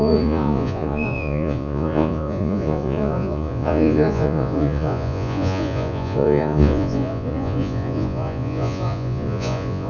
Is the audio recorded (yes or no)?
no